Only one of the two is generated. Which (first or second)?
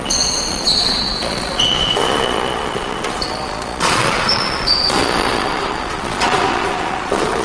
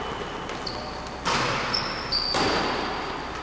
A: first